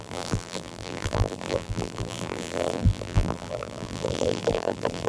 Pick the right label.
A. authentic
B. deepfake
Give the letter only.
B